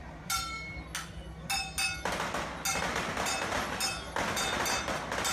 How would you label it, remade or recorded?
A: recorded